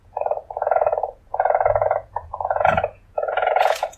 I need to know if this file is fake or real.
fake